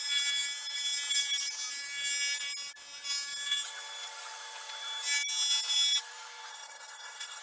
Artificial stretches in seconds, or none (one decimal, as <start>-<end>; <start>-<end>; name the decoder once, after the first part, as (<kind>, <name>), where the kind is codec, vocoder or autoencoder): 6.5-7.4 (codec, SNAC)